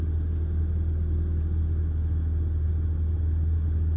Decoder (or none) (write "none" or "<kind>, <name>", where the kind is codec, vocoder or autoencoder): none